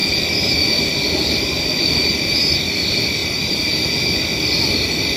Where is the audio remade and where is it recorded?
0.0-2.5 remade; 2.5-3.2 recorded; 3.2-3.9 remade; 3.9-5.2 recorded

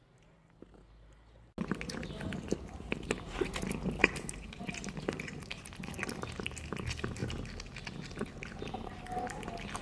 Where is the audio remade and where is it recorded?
0.0-4.0 recorded; 4.0-5.6 remade; 5.6-9.8 recorded

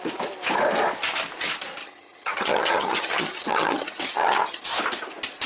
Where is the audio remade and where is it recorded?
0.0-1.8 recorded; 1.8-4.6 remade; 4.6-5.5 recorded

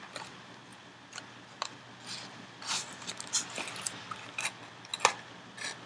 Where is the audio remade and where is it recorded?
0.0-5.9 recorded

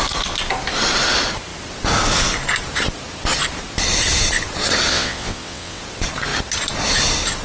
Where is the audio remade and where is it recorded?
0.0-4.9 recorded; 4.9-5.8 remade; 5.8-7.4 recorded

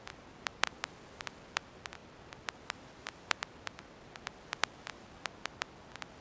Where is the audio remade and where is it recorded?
0.0-6.2 recorded

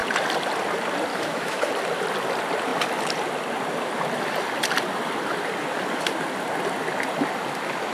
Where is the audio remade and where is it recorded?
0.0-1.1 recorded; 1.1-1.7 remade; 1.7-7.9 recorded

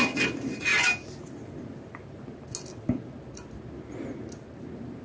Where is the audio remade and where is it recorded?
0.0-5.0 recorded